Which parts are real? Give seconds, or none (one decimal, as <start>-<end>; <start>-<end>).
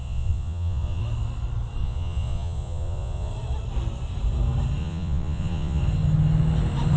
1.0-1.8; 3.3-4.8; 5.8-7.0